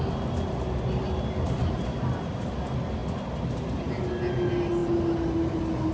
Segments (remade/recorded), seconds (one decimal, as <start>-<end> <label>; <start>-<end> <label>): 0.0-5.9 recorded